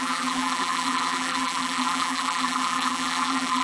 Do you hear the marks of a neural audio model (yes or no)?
yes